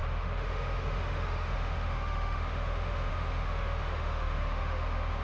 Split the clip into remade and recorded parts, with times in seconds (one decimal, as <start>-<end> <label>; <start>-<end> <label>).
0.0-5.2 remade